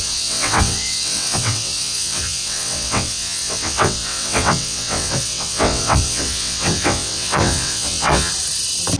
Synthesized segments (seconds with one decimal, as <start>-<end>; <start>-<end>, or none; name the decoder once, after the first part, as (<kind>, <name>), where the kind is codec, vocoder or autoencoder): 0.0-8.3 (vocoder, WaveNeXt)